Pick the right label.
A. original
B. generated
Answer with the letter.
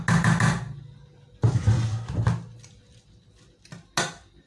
A